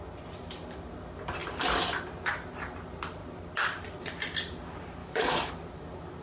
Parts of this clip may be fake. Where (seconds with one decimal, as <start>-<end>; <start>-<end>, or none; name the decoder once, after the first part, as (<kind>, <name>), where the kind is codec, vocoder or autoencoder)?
5.0-5.5 (autoencoder, DAC-VAE)